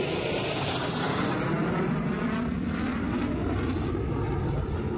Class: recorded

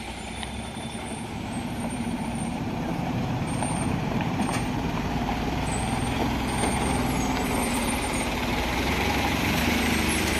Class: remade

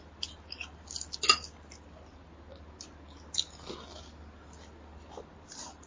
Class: recorded